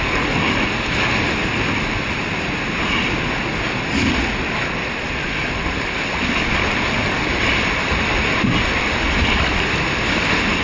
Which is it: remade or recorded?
recorded